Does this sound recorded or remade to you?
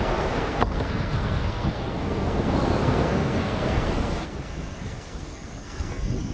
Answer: remade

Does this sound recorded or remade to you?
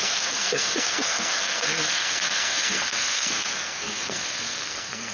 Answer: remade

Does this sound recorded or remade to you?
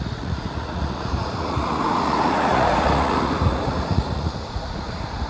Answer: remade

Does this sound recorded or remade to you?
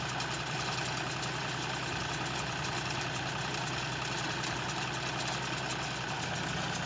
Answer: recorded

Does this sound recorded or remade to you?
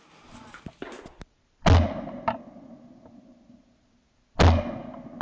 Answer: recorded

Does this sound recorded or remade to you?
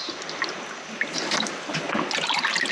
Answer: recorded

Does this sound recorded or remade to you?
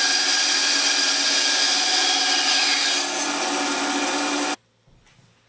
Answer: recorded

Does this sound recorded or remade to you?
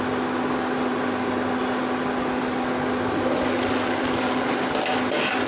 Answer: remade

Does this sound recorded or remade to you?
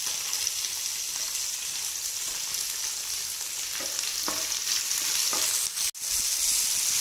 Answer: recorded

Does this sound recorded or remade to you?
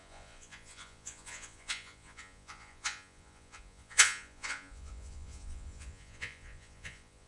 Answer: remade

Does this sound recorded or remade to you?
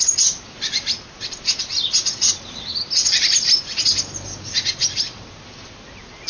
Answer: recorded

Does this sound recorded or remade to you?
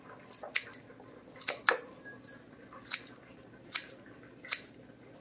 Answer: recorded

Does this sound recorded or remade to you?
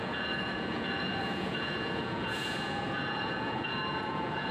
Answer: remade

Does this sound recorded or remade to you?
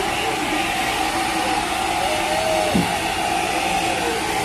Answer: recorded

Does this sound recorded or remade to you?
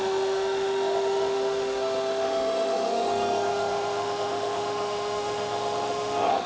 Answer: remade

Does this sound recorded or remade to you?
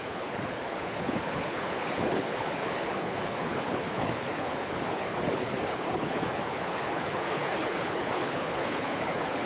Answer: remade